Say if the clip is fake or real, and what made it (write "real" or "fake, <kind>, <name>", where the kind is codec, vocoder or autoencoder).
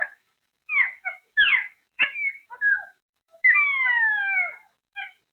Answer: fake, codec, DAC